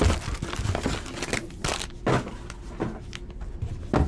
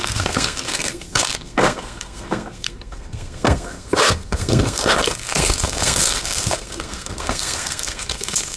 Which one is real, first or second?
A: first